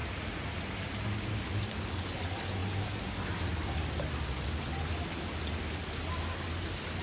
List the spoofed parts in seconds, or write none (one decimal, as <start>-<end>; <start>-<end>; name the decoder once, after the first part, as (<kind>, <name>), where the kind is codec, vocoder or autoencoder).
0.0-0.9 (vocoder, BigVGAN v2)